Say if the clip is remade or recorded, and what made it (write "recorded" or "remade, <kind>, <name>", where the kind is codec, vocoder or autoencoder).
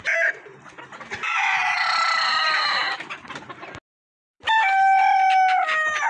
recorded